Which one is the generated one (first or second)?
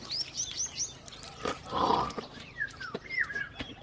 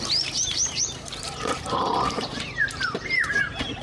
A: second